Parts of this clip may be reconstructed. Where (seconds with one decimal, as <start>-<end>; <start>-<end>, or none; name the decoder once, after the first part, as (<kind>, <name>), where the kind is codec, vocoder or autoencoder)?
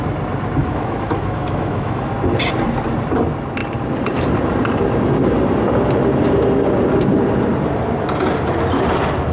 0.6-2.1 (autoencoder, DAC-VAE)